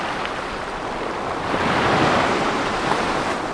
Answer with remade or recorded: recorded